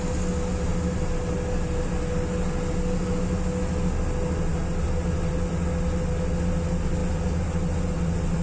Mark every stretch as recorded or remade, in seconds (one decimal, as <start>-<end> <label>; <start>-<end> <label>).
0.0-8.4 recorded